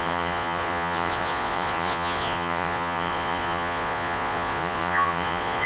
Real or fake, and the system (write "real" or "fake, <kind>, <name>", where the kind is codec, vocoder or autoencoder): fake, vocoder, Vocos